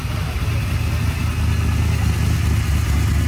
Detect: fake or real real